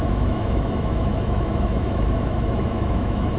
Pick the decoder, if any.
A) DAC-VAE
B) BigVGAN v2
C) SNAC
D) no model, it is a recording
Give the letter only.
A